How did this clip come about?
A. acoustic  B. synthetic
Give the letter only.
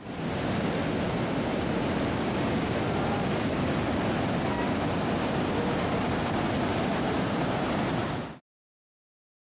A